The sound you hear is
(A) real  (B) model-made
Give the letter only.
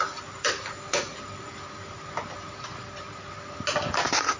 A